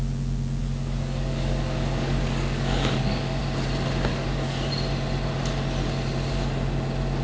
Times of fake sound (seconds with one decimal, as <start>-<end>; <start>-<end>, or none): 0.6-3.4; 4.1-4.7